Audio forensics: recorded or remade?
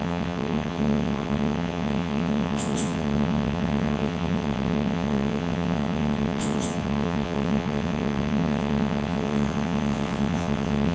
remade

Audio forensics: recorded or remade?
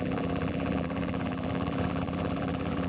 remade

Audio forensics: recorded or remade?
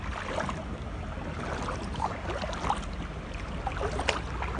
recorded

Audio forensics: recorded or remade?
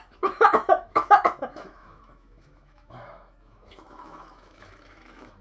remade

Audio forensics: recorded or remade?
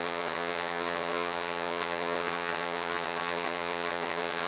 remade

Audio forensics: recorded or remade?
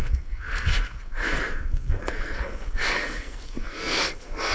remade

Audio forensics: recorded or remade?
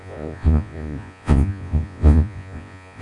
remade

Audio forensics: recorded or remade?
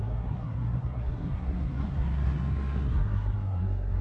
remade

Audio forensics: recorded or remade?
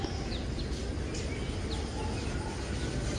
recorded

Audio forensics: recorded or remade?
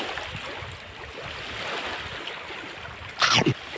recorded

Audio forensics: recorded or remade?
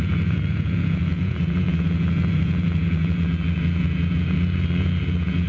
remade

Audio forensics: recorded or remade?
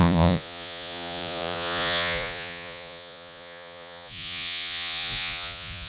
remade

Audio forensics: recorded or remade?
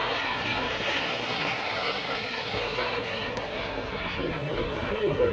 remade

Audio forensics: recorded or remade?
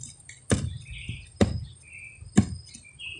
recorded